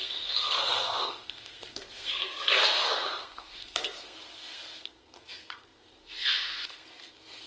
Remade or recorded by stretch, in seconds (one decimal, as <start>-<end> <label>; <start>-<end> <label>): 0.0-7.5 remade